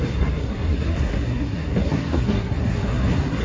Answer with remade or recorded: remade